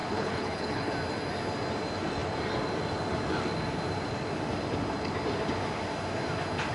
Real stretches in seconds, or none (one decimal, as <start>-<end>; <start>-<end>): 0.9-6.7